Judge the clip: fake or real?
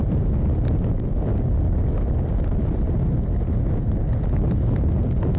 real